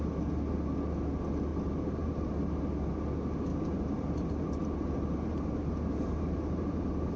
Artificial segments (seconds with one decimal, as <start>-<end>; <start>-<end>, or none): 1.5-2.1; 3.5-7.2